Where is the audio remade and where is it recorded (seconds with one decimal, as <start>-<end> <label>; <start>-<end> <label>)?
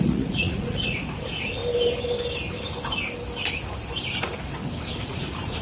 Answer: 0.0-1.6 remade; 1.6-5.0 recorded; 5.0-5.6 remade